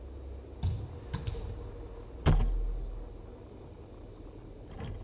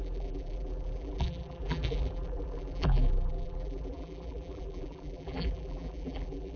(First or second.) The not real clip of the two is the second